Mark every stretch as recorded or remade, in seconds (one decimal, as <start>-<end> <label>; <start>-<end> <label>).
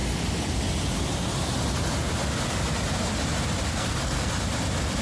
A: 0.0-3.7 recorded; 3.7-4.3 remade; 4.3-5.0 recorded